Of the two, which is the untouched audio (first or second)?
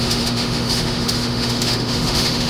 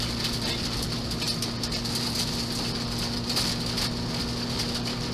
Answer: second